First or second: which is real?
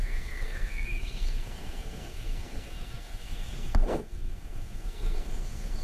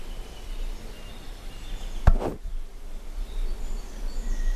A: second